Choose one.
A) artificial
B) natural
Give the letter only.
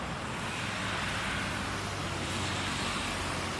B